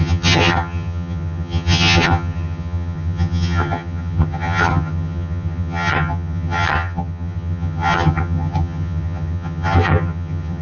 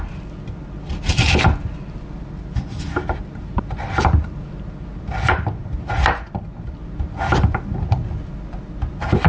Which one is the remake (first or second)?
first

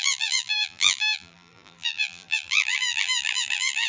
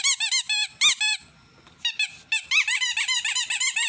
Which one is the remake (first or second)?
first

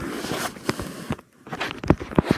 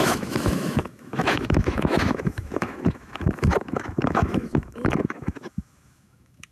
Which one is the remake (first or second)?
second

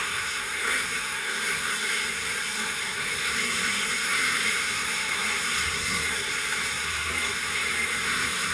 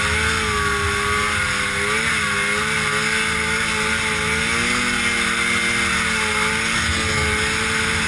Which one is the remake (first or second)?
first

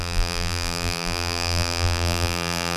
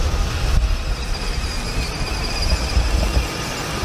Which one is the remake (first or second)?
first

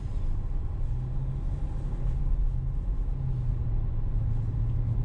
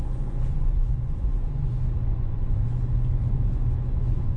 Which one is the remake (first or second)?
second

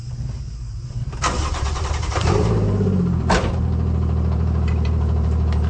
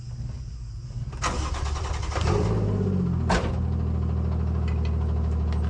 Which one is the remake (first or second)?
first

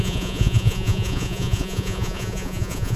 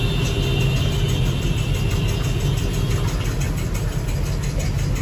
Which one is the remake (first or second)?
first